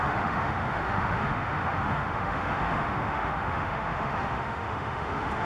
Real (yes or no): no